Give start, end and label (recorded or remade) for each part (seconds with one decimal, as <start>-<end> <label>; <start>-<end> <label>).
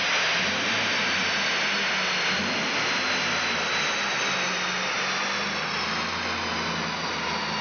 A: 0.0-7.6 recorded